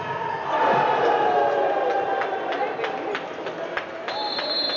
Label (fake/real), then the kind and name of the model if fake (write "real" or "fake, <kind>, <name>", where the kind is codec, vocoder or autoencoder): real